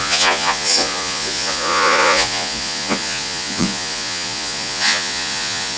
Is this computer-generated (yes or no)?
yes